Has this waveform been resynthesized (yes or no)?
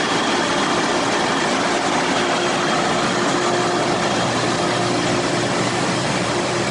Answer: no